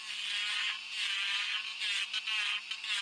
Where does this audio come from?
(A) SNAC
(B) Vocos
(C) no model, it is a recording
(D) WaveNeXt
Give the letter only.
C